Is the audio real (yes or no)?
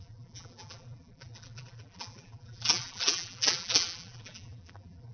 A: no